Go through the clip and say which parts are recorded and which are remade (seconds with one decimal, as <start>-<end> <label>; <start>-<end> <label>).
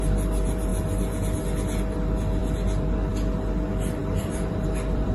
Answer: 0.0-4.0 recorded; 4.0-5.1 remade